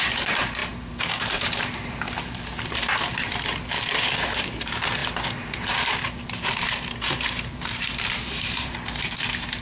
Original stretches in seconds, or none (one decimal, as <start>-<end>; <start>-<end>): none